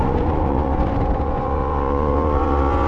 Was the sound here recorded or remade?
remade